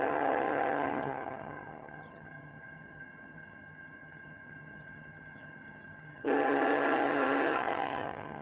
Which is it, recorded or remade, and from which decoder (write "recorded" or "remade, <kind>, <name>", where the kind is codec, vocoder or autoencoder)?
remade, vocoder, HiFi-GAN